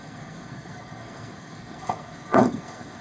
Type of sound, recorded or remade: remade